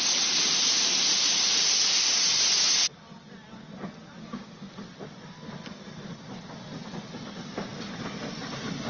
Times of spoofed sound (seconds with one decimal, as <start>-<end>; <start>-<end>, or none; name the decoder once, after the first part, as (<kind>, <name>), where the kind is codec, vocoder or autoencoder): 4.2-4.7 (codec, DAC)

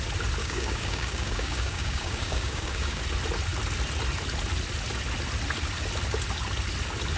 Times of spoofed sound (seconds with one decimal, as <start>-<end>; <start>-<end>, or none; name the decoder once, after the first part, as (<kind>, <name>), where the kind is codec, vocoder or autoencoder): 0.4-3.0 (codec, DAC)

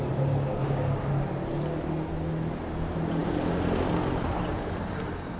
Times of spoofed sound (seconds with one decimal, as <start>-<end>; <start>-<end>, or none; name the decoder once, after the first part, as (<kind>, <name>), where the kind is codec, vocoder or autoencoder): 0.6-1.1 (codec, DAC)

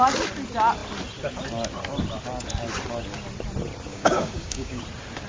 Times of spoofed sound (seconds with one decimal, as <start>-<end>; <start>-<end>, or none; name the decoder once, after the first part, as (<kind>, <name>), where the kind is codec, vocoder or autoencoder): 3.9-4.8 (codec, DAC)